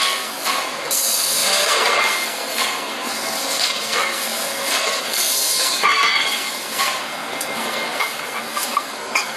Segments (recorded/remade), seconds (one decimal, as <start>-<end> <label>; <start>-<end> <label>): 0.0-9.4 remade